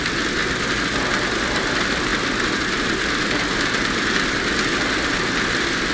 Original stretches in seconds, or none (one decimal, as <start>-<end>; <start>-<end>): 0.0-5.9